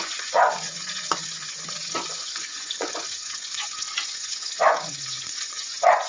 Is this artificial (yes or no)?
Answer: yes